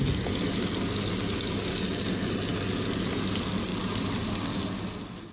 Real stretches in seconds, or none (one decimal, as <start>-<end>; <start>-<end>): 0.0-5.3